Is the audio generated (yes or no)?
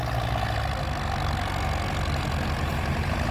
no